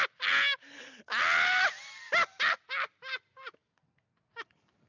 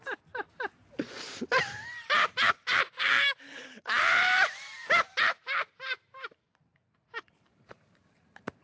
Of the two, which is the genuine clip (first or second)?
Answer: first